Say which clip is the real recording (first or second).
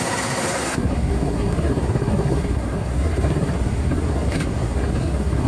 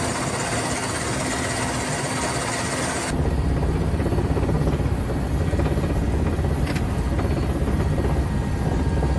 second